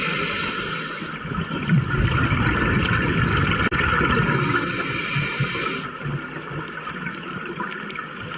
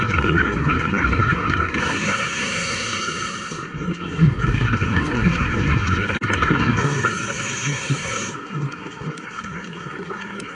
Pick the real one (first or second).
first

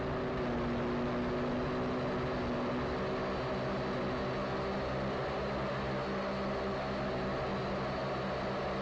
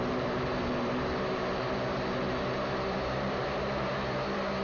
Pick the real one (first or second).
first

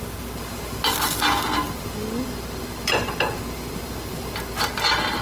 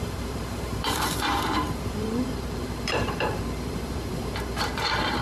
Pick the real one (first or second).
first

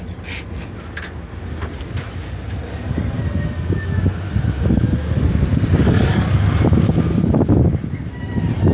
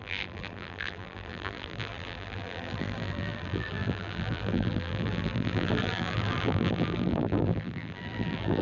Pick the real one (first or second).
first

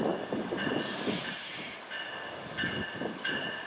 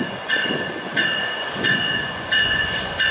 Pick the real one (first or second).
first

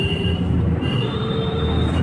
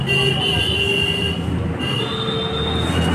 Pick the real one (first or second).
second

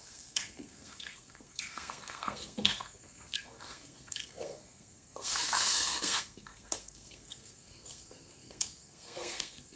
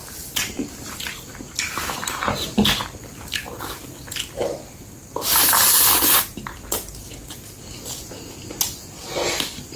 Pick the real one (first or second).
second